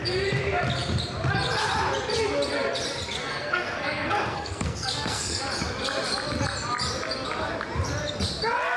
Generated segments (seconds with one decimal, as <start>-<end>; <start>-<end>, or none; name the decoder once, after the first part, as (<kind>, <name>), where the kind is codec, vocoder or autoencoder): 3.2-5.4 (codec, SNAC)